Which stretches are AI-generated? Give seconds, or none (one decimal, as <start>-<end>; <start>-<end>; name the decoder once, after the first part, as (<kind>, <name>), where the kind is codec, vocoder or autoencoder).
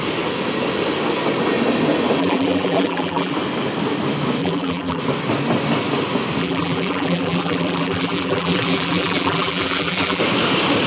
2.2-3.3 (vocoder, BigVGAN v2); 4.4-5.0; 6.4-10.2